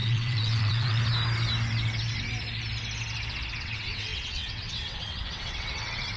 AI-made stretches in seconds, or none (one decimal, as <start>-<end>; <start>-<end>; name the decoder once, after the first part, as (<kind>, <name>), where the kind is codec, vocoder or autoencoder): 0.0-1.0 (vocoder, WaveNeXt); 3.6-6.2

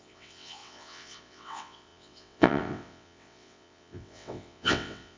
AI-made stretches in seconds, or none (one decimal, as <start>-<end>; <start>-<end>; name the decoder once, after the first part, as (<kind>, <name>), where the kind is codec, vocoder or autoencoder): 0.0-5.2 (vocoder, WaveNeXt)

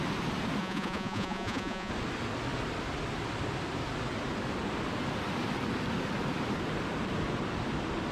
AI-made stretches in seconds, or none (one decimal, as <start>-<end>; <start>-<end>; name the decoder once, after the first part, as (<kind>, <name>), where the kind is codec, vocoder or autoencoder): 0.6-1.9 (vocoder, Vocos)

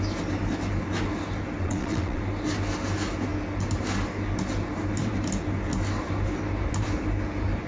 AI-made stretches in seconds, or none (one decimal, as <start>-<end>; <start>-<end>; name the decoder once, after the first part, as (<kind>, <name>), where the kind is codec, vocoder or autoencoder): 1.6-2.2 (vocoder, WaveNeXt)